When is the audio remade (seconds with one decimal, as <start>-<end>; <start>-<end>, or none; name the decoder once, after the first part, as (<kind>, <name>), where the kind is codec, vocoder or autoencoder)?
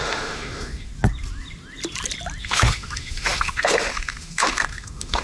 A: 0.0-0.9 (autoencoder, DAC-VAE); 2.4-5.2